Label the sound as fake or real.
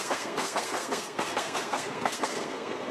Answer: fake